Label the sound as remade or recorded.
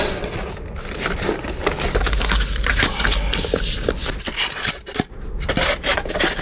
remade